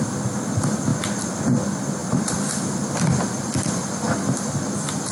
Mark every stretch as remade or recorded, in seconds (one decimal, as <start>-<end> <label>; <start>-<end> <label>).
0.0-2.0 recorded; 2.0-4.5 remade; 4.5-5.1 recorded